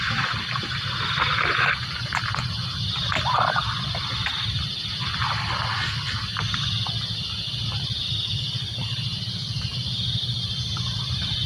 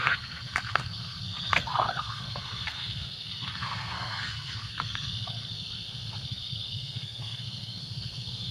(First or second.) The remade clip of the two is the second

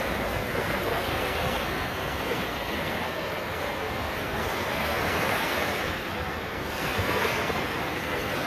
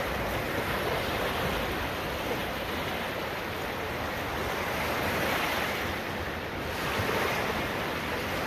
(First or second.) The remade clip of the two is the first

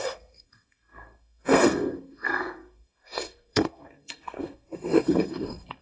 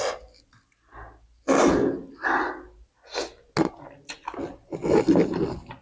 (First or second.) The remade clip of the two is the first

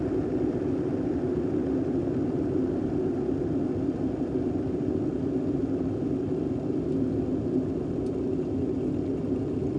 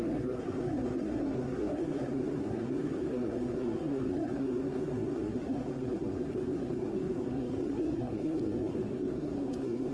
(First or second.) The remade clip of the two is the second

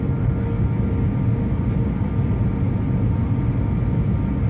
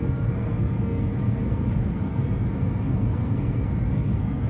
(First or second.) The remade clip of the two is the second